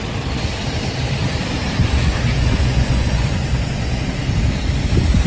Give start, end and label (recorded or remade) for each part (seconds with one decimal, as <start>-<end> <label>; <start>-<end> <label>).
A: 0.0-1.8 recorded; 1.8-4.0 remade; 4.0-5.3 recorded